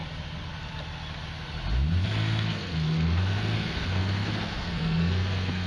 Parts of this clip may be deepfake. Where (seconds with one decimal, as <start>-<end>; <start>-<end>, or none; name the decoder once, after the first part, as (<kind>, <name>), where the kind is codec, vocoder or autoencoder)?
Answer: 2.0-5.7 (codec, SNAC)